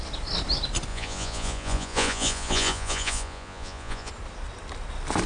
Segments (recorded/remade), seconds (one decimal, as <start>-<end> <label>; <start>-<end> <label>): 0.0-0.9 recorded; 0.9-4.1 remade; 4.1-5.3 recorded